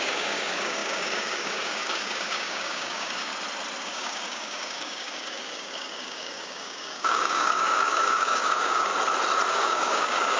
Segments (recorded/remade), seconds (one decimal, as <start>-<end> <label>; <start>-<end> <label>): 0.0-3.3 remade; 3.3-3.8 recorded; 3.8-8.9 remade; 8.9-9.5 recorded; 9.5-10.4 remade